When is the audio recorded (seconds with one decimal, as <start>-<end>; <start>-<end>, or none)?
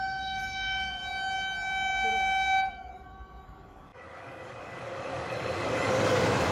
1.0-2.7